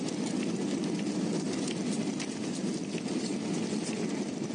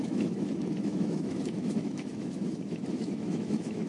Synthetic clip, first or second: second